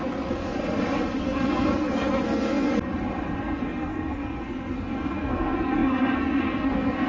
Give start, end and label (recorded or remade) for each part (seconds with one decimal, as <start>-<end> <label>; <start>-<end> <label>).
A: 0.0-0.6 remade; 0.6-1.2 recorded; 1.2-2.7 remade; 2.7-3.4 recorded; 3.4-7.1 remade